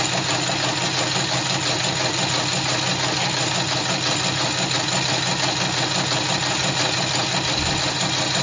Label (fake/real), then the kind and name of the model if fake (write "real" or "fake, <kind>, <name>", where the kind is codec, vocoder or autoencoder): real